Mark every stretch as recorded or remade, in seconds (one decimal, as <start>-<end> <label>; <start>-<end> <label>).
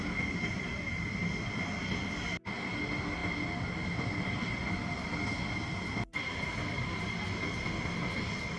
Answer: 0.0-8.6 recorded